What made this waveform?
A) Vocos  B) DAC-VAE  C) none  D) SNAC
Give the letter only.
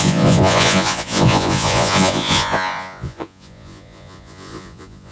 A